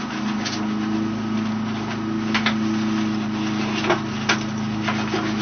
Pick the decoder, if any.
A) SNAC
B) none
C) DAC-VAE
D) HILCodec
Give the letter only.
B